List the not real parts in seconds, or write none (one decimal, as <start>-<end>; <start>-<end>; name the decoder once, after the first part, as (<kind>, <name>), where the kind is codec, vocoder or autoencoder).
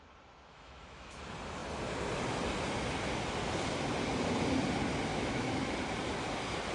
0.5-1.2 (autoencoder, DAC-VAE); 5.1-5.7